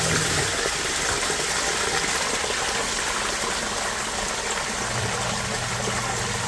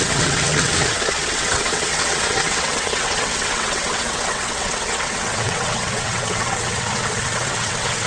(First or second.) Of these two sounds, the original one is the first